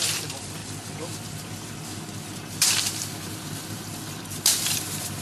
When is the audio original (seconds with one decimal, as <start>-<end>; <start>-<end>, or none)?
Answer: 0.0-5.2